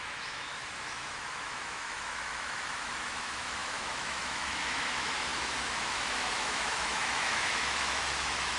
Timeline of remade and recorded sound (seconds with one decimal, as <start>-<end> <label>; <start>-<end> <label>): 0.0-8.6 remade